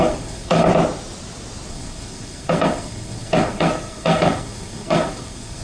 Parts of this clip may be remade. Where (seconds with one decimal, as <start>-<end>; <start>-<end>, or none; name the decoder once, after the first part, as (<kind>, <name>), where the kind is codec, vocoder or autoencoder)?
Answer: 0.0-0.7 (codec, SNAC); 1.7-5.6